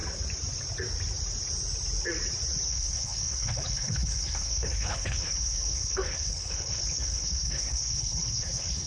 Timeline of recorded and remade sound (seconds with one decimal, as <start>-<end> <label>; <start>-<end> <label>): 0.0-2.7 recorded; 2.7-8.9 remade